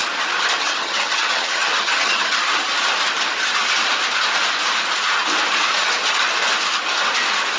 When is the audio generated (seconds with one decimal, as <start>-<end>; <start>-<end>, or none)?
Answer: 0.6-2.7